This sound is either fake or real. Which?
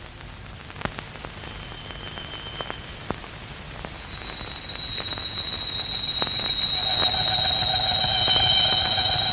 real